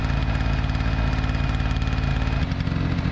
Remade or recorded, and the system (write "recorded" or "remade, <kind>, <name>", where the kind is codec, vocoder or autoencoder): recorded